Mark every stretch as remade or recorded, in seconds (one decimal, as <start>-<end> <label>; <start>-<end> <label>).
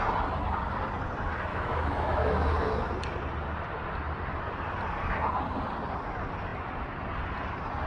0.0-1.5 recorded; 1.5-2.9 remade; 2.9-7.9 recorded